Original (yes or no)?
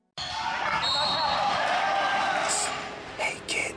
yes